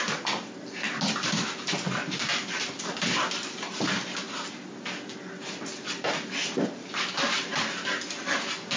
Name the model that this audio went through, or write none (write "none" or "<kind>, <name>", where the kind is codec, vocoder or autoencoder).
none